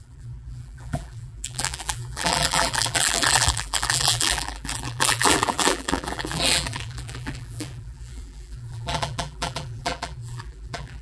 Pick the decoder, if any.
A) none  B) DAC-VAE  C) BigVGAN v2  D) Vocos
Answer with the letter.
C